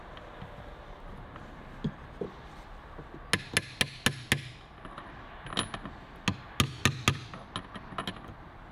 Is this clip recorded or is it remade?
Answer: recorded